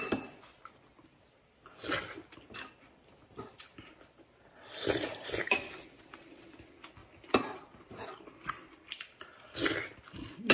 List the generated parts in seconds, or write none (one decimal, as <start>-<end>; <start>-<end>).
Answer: 2.2-6.0